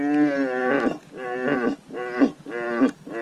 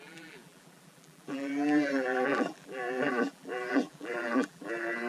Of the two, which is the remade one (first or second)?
second